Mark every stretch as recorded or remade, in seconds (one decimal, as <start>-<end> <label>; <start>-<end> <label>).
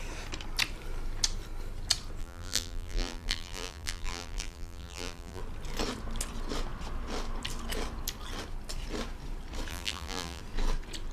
0.0-2.2 recorded; 2.2-5.4 remade; 5.4-9.7 recorded; 9.7-10.4 remade; 10.4-11.1 recorded